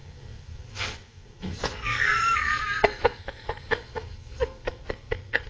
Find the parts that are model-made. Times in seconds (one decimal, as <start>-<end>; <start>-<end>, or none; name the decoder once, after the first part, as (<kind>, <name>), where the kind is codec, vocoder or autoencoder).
0.0-5.5 (codec, SNAC)